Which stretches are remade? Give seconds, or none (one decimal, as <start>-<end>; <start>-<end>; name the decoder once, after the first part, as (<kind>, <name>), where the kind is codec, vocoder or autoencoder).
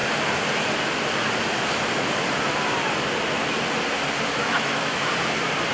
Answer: 4.4-5.1 (autoencoder, DAC-VAE)